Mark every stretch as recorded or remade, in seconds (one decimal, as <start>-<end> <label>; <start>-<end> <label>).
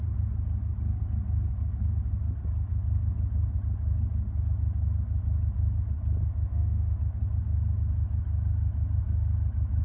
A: 0.0-6.5 recorded; 6.5-7.0 remade; 7.0-9.8 recorded